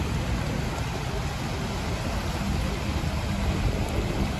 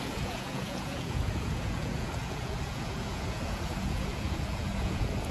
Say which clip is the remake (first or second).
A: second